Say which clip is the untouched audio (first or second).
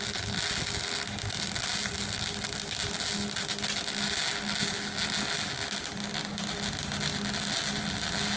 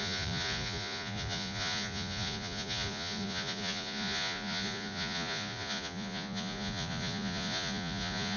first